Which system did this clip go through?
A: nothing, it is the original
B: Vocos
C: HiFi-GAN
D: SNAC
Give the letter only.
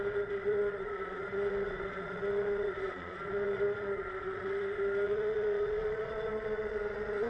B